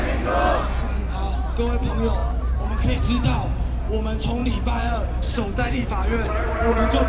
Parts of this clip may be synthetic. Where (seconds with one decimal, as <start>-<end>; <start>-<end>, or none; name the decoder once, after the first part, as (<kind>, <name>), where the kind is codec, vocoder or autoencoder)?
2.2-3.0 (vocoder, BigVGAN v2); 4.4-7.1